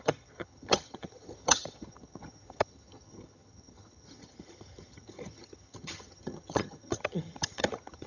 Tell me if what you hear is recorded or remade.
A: remade